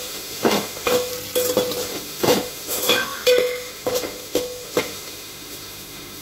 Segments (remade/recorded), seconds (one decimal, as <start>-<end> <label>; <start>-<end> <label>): 0.0-1.1 remade; 1.1-1.8 recorded; 1.8-6.2 remade